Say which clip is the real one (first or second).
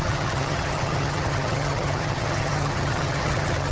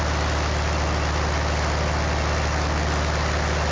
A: second